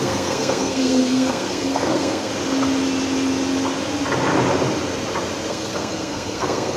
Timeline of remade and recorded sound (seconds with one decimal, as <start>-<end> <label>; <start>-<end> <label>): 0.0-2.3 remade; 2.3-5.5 recorded; 5.5-6.8 remade